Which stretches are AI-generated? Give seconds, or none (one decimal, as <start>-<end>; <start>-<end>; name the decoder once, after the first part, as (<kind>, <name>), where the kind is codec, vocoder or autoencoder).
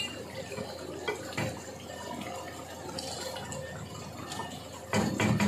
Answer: none